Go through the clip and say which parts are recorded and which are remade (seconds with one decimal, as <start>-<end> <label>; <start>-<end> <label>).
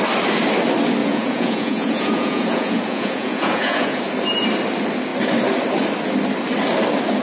0.0-1.0 recorded; 1.0-4.0 remade; 4.0-7.2 recorded